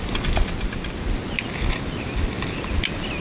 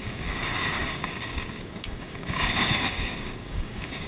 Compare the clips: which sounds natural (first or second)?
first